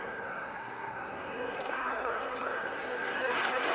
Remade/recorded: remade